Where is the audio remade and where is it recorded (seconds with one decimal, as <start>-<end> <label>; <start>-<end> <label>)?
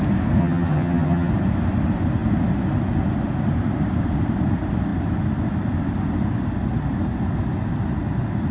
0.0-0.4 recorded; 0.4-1.3 remade; 1.3-8.5 recorded